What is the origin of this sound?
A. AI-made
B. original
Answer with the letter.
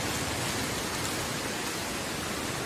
B